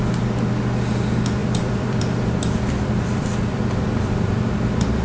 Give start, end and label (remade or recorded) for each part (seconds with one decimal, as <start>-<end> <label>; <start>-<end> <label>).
0.0-1.4 recorded; 1.4-4.4 remade; 4.4-5.0 recorded